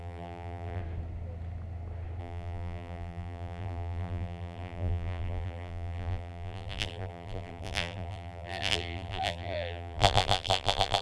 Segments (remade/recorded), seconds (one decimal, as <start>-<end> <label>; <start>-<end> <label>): 0.0-0.8 remade; 0.8-2.2 recorded; 2.2-11.0 remade